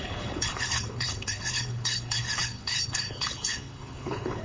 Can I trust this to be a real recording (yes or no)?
no